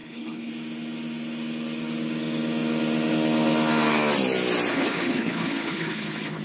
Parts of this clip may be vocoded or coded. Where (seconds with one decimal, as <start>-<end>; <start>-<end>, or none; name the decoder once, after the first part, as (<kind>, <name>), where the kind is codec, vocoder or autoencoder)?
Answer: 0.0-0.5 (codec, HILCodec); 4.7-6.4